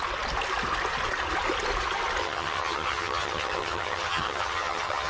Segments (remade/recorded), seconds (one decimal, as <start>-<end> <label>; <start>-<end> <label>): 0.0-2.2 recorded; 2.2-5.1 remade

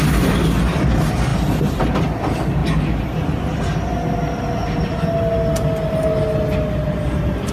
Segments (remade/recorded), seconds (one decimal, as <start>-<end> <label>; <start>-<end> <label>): 0.0-7.5 recorded

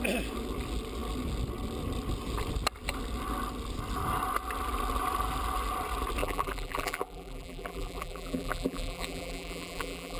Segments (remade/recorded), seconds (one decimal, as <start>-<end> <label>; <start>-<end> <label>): 0.0-6.2 recorded; 6.2-10.2 remade